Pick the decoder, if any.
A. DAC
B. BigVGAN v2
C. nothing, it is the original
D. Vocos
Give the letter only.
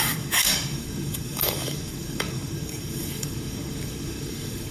A